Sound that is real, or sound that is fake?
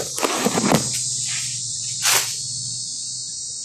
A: real